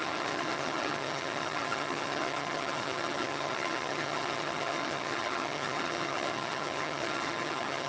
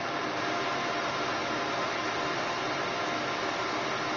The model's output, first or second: first